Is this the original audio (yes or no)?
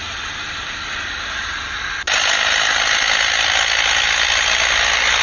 yes